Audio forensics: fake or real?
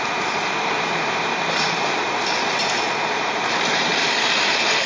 fake